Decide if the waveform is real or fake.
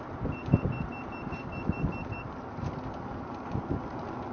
real